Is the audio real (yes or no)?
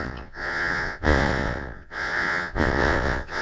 no